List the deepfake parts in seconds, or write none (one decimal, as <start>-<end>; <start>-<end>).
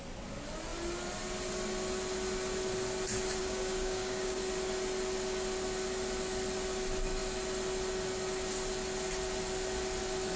3.4-4.4